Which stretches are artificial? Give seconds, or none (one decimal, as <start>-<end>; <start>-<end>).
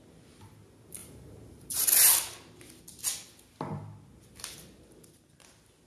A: 1.0-1.8